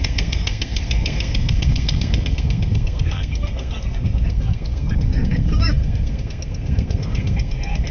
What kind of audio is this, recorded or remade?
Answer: remade